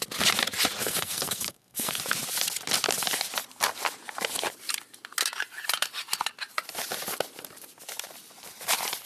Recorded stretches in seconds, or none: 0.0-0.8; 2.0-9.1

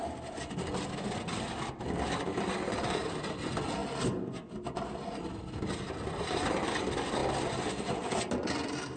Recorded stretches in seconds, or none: 0.0-9.0